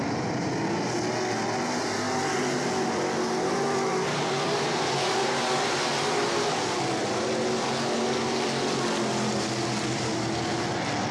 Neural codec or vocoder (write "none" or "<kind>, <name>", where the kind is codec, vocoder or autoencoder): none